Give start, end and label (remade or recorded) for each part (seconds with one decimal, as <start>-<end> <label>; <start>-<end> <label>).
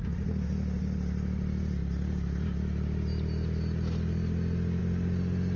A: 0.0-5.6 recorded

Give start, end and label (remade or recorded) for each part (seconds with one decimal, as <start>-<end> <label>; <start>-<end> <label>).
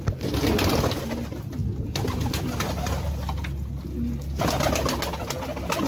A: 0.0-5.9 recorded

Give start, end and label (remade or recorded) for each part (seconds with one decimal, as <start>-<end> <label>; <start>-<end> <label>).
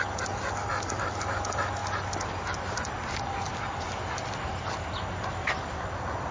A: 0.0-6.3 recorded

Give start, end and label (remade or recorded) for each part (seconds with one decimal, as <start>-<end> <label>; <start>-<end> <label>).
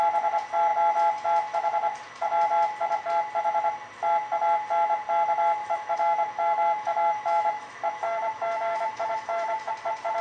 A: 0.0-5.6 recorded; 5.6-9.7 remade; 9.7-10.2 recorded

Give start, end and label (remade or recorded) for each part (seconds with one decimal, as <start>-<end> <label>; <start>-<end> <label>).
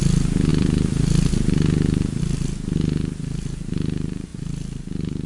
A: 0.0-5.3 recorded